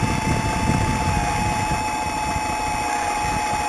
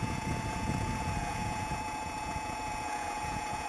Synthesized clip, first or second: second